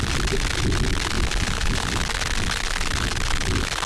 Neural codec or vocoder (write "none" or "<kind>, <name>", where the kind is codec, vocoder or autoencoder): none